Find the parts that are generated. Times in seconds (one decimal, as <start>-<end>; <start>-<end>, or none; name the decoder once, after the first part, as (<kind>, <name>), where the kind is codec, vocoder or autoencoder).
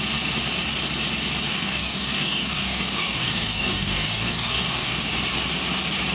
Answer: 1.5-5.0 (codec, DAC)